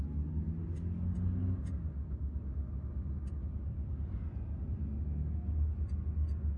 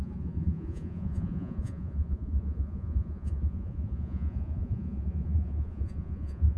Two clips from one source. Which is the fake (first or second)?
second